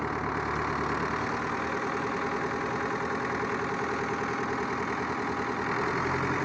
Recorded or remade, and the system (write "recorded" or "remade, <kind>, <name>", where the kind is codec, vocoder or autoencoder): recorded